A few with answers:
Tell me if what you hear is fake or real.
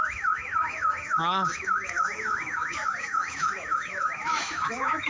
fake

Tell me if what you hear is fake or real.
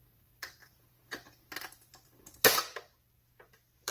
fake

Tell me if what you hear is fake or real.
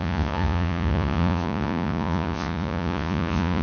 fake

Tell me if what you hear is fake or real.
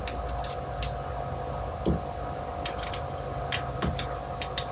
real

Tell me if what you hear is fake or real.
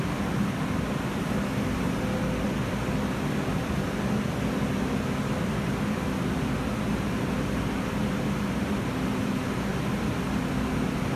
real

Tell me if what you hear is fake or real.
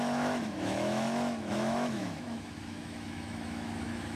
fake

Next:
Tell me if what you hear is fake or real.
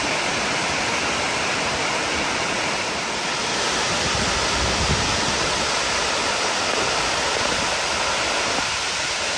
real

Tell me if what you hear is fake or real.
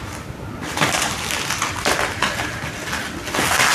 real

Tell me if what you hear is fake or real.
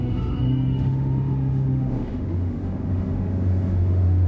fake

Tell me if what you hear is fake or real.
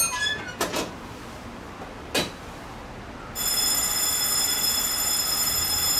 real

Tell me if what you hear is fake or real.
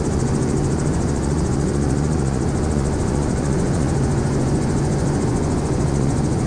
fake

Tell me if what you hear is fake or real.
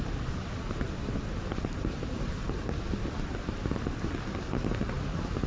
real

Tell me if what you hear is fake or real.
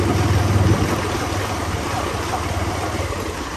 real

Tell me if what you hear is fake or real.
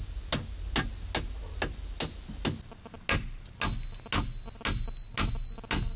real